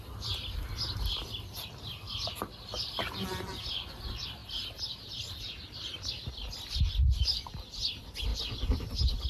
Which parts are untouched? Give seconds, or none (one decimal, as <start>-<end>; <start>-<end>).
0.0-4.4; 6.3-9.3